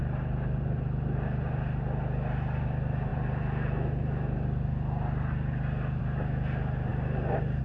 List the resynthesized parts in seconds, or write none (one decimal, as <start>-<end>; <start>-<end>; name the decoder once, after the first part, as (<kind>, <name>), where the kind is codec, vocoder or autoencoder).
none